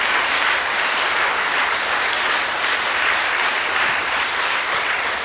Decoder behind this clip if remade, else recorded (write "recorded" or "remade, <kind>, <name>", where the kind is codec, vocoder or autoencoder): remade, vocoder, BigVGAN v2